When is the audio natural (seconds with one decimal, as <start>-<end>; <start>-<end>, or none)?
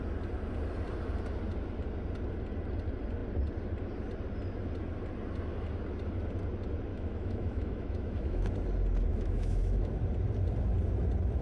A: 0.0-6.9; 8.5-9.1; 9.9-11.4